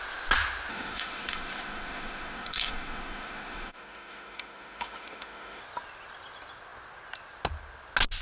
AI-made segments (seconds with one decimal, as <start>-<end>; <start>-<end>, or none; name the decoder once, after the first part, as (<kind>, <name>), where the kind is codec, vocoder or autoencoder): 0.7-5.6 (autoencoder, DAC-VAE)